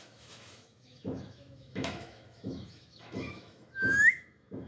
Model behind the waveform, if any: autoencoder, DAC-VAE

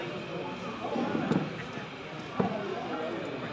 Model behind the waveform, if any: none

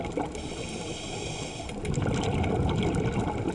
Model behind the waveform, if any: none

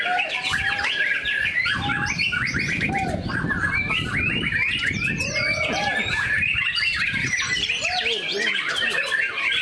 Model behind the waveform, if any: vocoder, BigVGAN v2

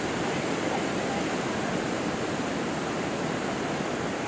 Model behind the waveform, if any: none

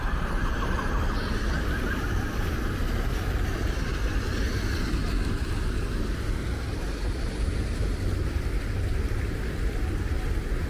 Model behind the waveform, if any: none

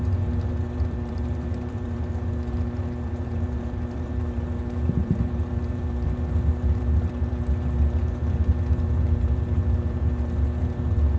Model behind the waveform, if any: vocoder, BigVGAN v2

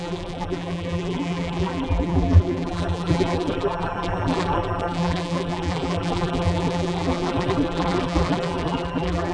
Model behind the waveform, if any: vocoder, BigVGAN v2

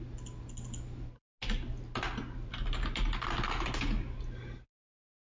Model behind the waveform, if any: none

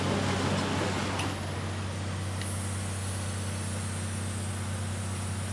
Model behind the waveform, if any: none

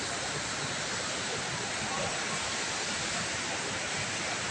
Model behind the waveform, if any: none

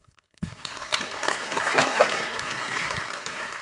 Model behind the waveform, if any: codec, SNAC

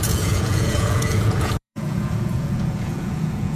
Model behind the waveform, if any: vocoder, Vocos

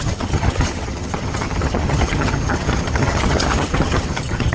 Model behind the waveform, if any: vocoder, HiFi-GAN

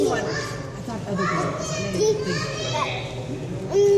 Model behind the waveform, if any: none